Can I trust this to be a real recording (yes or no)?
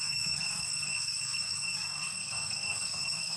no